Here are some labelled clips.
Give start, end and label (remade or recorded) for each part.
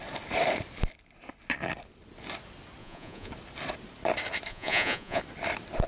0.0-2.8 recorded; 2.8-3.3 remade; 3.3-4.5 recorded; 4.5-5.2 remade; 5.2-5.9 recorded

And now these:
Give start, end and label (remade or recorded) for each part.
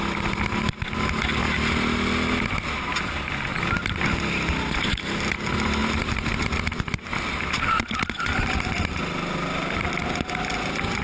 0.0-11.0 recorded